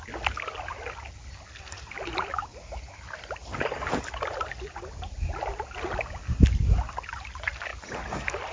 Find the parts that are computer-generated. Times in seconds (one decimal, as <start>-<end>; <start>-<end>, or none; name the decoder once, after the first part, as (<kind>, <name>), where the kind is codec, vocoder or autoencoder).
none